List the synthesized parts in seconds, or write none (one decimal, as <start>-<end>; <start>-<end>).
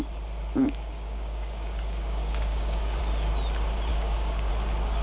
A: 0.6-3.0; 3.9-4.5